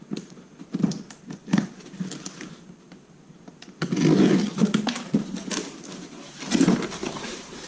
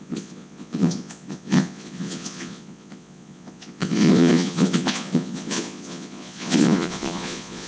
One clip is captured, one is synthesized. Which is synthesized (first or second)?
second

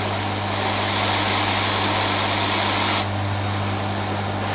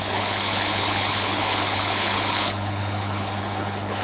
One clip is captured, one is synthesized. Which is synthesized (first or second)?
second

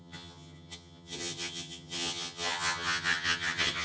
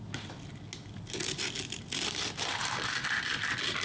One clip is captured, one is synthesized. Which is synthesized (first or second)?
first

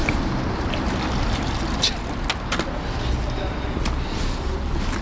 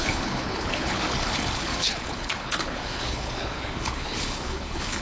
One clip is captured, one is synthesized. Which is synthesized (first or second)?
second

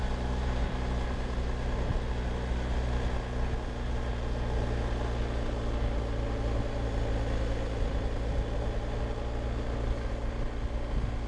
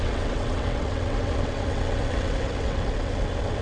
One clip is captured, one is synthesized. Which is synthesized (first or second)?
second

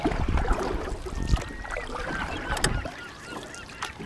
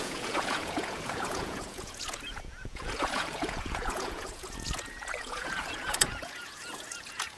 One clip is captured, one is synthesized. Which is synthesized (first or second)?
second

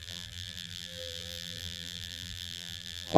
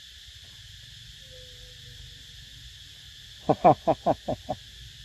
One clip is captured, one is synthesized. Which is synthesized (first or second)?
first